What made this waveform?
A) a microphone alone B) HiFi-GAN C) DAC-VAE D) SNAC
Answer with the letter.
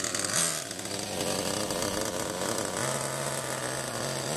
A